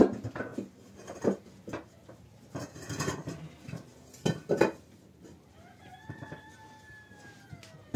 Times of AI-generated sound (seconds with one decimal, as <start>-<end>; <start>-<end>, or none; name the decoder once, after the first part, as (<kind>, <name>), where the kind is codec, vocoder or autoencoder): 3.9-5.6 (vocoder, BigVGAN v2)